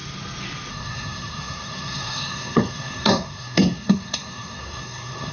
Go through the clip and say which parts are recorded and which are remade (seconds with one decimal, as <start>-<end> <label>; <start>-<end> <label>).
0.0-0.7 recorded; 0.7-5.3 remade